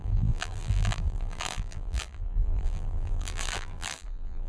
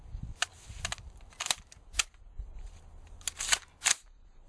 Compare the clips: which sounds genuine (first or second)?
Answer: second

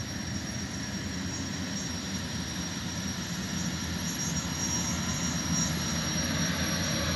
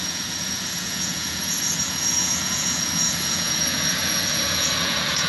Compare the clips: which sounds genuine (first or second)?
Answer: first